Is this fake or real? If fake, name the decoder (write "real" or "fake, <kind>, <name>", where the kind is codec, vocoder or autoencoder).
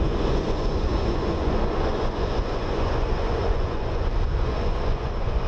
fake, vocoder, Vocos